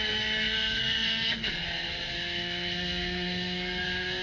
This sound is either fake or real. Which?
fake